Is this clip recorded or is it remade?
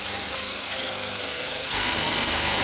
remade